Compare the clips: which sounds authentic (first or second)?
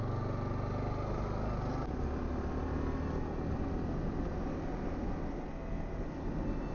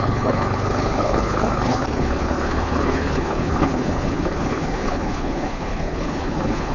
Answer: first